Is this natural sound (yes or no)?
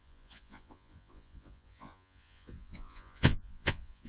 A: no